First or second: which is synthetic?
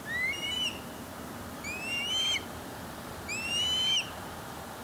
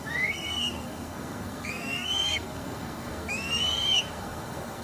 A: second